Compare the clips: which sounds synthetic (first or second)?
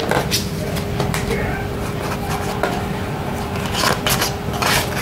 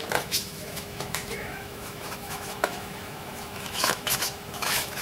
second